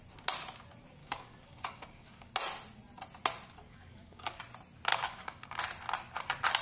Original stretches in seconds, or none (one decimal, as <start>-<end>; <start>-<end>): 0.0-1.0; 2.3-3.6; 4.4-4.9; 5.6-6.6